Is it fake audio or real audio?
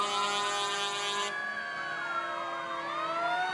real